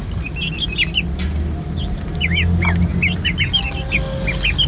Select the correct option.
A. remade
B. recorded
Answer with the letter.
B